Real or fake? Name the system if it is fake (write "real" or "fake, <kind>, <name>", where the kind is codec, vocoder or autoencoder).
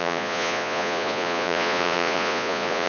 fake, vocoder, Vocos